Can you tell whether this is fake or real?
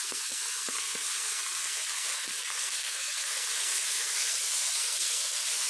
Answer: fake